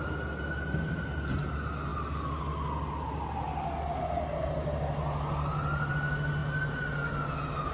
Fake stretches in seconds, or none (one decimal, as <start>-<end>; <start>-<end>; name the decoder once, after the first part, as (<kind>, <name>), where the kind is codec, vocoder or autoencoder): none